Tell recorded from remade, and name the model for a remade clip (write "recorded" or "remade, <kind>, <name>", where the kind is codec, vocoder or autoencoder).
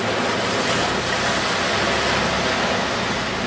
recorded